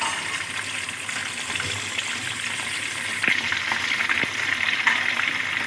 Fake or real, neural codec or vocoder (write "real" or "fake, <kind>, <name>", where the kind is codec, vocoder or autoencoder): real